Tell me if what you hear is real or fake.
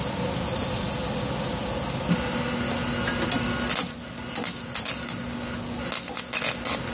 real